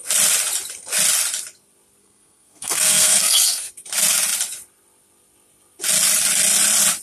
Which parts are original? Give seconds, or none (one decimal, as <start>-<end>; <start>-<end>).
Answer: 0.0-2.0; 3.7-7.0